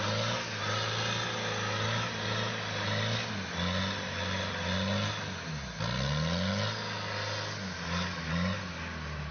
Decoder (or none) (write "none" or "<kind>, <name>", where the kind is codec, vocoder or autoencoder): none